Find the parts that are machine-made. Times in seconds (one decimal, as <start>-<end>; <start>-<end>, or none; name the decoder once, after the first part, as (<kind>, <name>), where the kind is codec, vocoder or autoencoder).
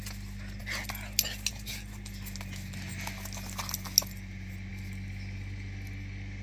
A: none